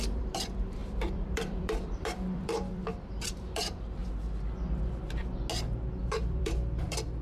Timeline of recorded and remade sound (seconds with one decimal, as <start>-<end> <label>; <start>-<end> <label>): 0.0-4.0 remade; 4.0-5.9 recorded; 5.9-7.2 remade